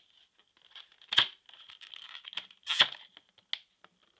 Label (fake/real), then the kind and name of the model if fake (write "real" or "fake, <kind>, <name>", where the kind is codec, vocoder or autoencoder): real